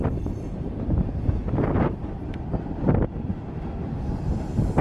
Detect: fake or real real